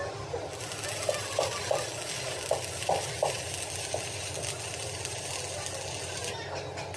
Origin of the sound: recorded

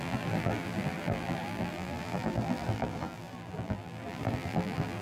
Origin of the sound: remade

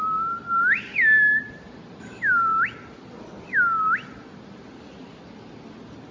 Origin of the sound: recorded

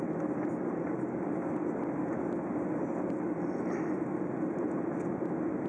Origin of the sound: recorded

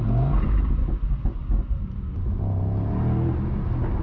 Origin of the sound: recorded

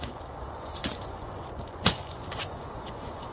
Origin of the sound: remade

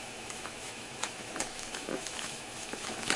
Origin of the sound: remade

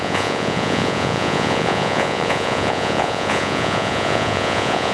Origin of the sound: remade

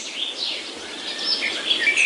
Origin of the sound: recorded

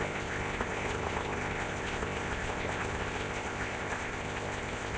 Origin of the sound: remade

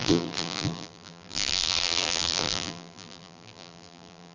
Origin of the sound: remade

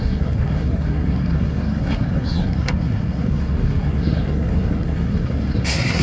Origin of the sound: remade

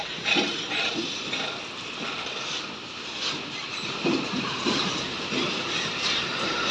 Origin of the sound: recorded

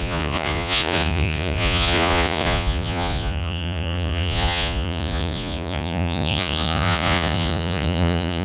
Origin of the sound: remade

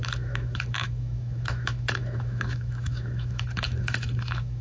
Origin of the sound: remade